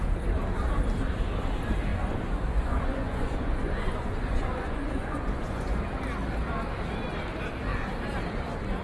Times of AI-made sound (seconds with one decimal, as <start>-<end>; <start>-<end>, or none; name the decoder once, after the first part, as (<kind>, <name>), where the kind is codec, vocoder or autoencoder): 1.9-5.8 (vocoder, Vocos)